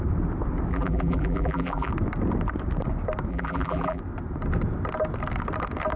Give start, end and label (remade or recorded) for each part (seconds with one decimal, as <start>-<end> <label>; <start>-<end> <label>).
0.0-0.7 recorded; 0.7-1.9 remade; 1.9-3.3 recorded; 3.3-4.0 remade; 4.0-6.0 recorded